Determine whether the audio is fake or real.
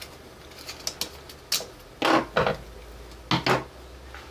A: real